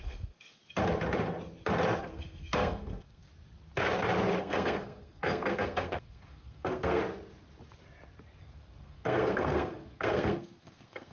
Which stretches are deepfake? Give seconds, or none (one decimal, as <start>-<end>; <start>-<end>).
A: 0.0-0.6; 2.0-3.3; 4.4-7.0; 8.4-11.1